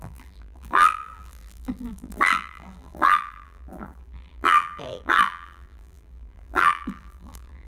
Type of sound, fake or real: fake